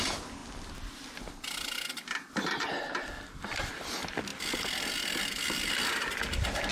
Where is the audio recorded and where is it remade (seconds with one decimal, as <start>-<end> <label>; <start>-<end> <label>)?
0.0-4.3 recorded; 4.3-5.7 remade; 5.7-6.7 recorded